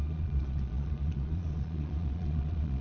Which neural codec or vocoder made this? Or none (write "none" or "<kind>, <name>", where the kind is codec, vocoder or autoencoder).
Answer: vocoder, Vocos